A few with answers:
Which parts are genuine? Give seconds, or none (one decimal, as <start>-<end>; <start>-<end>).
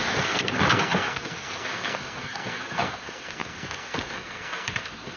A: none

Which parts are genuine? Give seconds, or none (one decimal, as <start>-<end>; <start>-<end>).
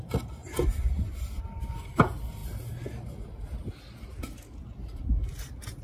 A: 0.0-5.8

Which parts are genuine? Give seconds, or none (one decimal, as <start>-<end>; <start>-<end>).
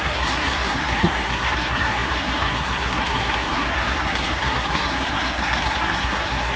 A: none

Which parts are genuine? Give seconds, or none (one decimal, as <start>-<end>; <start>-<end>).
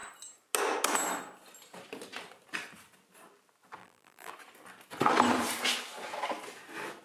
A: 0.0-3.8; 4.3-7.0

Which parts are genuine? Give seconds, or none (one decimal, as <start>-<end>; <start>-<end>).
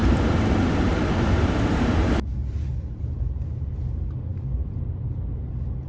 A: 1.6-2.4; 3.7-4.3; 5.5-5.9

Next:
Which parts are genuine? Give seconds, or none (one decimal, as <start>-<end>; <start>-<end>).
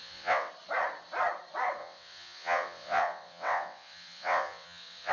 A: 0.5-1.8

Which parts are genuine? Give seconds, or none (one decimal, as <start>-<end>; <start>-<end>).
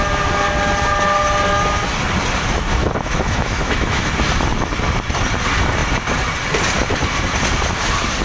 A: 0.0-2.8; 4.1-8.2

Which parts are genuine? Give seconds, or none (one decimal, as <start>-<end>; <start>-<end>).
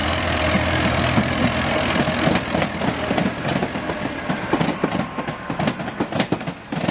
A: 2.3-3.6; 4.2-6.9